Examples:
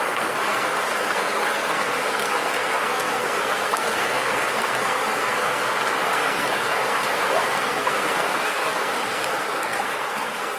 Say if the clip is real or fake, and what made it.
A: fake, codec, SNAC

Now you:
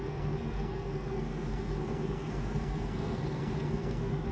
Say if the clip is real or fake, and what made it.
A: fake, codec, SNAC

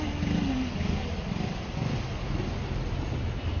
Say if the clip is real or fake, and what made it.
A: real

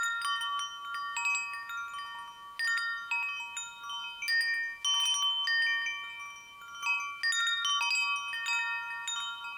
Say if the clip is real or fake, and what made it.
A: real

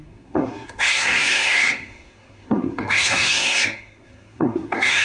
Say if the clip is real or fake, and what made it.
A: fake, codec, SNAC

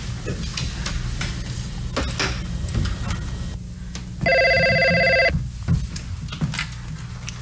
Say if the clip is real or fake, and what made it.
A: real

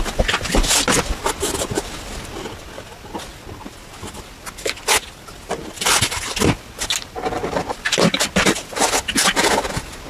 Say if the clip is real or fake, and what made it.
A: real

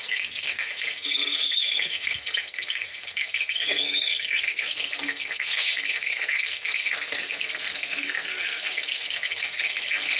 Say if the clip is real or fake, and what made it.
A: fake, codec, SNAC